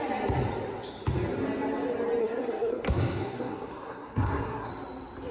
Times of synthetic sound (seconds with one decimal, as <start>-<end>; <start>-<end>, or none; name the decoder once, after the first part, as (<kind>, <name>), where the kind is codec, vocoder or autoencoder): 2.2-4.7 (codec, SNAC)